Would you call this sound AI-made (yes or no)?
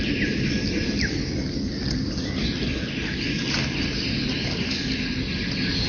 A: no